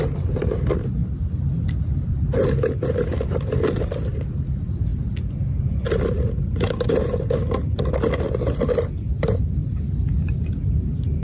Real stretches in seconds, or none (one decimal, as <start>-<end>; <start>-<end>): 0.0-11.2